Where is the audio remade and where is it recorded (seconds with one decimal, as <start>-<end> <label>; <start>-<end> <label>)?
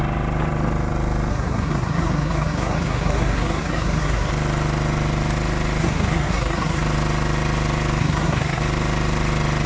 0.0-1.3 recorded; 1.3-4.3 remade; 4.3-5.8 recorded; 5.8-6.8 remade; 6.8-8.0 recorded; 8.0-8.6 remade; 8.6-9.7 recorded